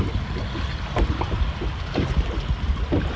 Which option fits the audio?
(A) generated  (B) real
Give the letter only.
B